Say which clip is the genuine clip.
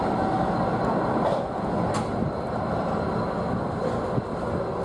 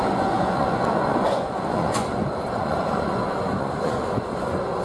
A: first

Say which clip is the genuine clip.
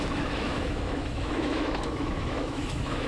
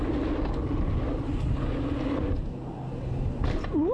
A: second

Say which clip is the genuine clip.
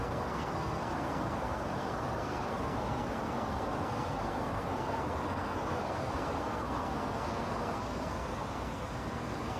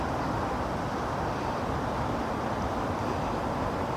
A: second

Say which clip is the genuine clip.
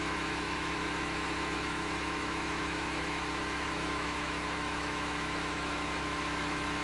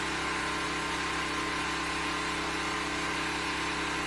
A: second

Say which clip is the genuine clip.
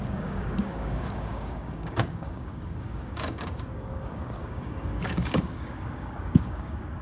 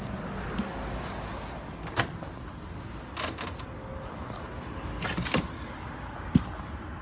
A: second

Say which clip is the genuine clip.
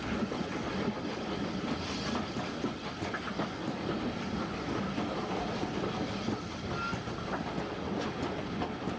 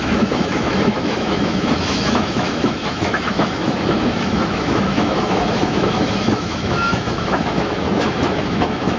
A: first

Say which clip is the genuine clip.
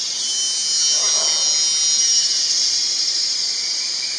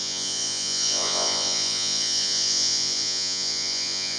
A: first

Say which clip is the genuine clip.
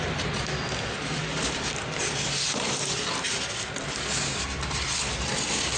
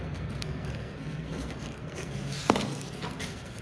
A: first